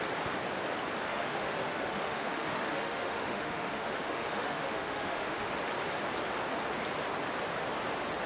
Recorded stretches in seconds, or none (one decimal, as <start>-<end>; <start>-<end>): 0.0-1.1; 5.5-8.3